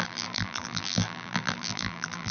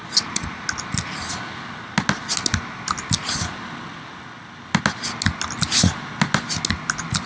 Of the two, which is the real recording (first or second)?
second